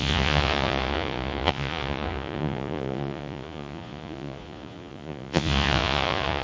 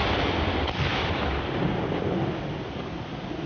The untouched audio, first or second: second